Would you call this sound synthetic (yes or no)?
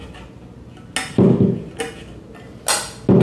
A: no